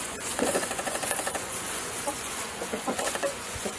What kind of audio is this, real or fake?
fake